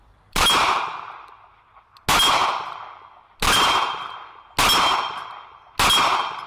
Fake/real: real